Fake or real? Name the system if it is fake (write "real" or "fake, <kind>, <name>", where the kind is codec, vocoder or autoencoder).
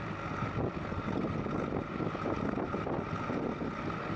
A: real